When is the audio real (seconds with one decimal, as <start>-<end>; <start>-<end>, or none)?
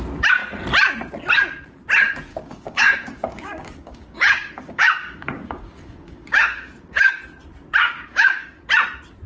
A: 0.0-2.3; 7.2-7.8; 8.6-9.3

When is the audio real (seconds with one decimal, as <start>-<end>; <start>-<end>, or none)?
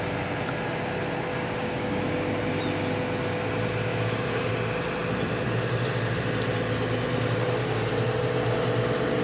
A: 0.0-1.3; 2.4-3.9; 4.5-9.2